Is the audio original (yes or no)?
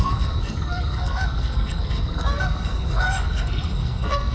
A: no